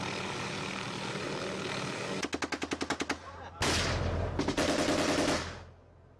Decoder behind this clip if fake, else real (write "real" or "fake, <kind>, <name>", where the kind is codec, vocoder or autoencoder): real